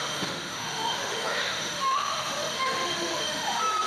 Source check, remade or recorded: remade